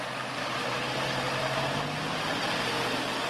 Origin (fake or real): real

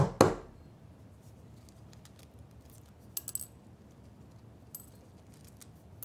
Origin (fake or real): real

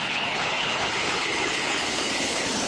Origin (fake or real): fake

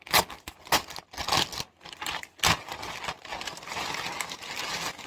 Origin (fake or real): real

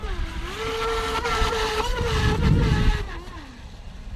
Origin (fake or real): real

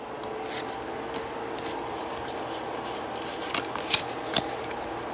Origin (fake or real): real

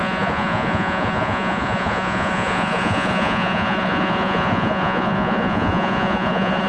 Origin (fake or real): fake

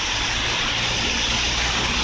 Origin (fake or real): real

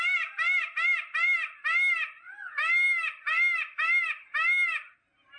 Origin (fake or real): real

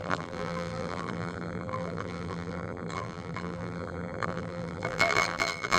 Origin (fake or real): fake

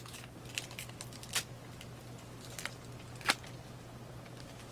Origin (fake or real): real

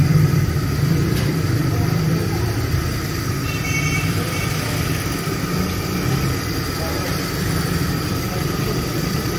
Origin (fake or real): fake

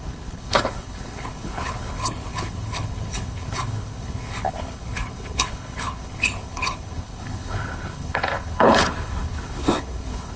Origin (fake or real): fake